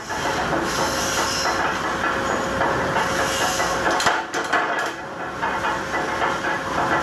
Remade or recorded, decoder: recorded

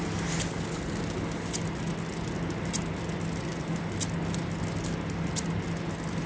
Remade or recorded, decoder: recorded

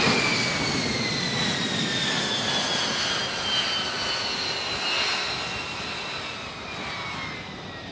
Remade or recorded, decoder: recorded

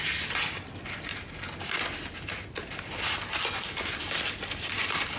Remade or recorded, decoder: recorded